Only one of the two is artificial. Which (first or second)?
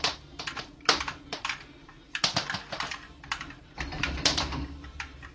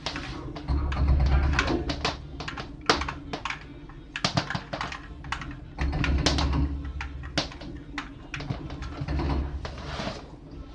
first